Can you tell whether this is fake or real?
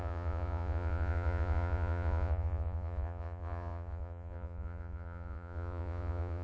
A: fake